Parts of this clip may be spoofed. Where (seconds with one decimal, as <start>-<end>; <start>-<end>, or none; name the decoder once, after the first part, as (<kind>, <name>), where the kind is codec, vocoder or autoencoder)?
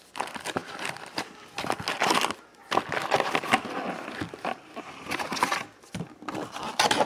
none